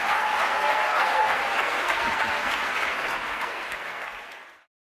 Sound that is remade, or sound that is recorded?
remade